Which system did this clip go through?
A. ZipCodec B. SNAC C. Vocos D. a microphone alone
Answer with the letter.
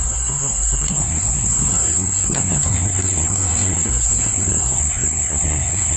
B